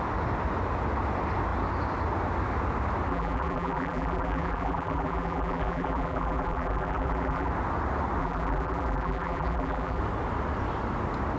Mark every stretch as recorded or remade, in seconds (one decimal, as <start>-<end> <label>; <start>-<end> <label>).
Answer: 0.0-3.1 recorded; 3.1-7.5 remade; 7.5-8.2 recorded; 8.2-10.0 remade; 10.0-11.4 recorded